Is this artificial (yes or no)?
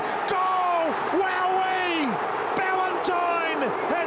no